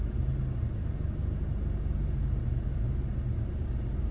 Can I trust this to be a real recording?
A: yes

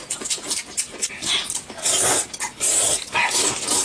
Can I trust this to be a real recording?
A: yes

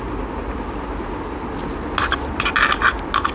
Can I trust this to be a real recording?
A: yes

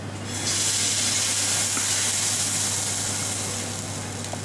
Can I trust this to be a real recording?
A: yes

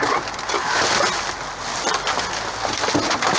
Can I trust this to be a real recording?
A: yes